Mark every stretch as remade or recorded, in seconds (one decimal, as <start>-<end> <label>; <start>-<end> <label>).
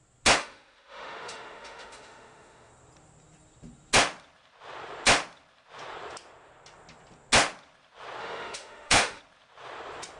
0.0-0.4 recorded; 0.4-2.7 remade; 2.7-8.2 recorded; 8.2-9.2 remade; 9.2-10.2 recorded